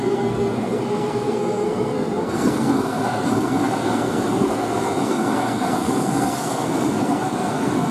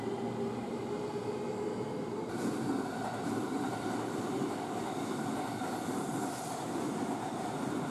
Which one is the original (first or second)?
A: second